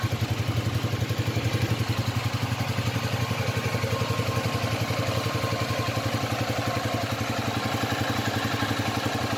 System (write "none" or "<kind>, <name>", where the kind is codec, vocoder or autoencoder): none